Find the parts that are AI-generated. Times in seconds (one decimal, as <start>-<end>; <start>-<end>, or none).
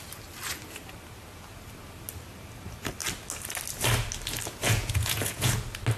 4.6-5.5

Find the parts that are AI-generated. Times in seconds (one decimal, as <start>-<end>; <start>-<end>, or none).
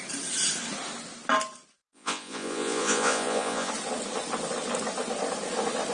1.8-3.7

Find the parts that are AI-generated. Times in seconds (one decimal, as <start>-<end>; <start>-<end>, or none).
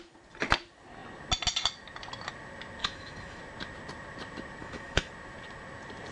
2.8-3.4; 4.6-5.1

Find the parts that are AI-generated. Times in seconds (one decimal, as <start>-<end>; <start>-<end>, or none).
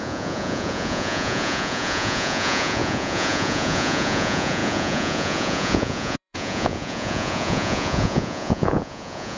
0.0-9.4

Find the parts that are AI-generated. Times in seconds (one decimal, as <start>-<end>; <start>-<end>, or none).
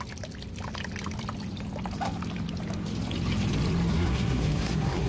3.9-5.1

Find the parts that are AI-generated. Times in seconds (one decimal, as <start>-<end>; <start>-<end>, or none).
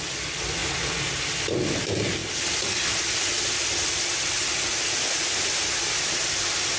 none